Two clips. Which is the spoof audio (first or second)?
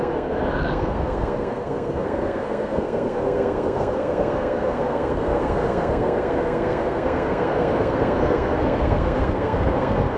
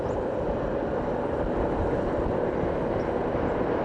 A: first